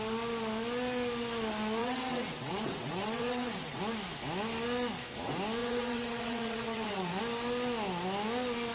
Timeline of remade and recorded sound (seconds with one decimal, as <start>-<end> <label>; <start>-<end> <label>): 0.0-1.8 recorded; 1.8-3.8 remade; 3.8-5.6 recorded; 5.6-7.2 remade; 7.2-8.7 recorded